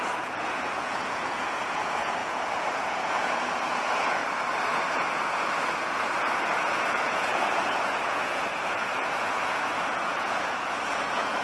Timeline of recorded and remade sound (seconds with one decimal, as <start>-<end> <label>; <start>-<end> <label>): 0.0-4.2 remade; 4.2-4.9 recorded; 4.9-11.4 remade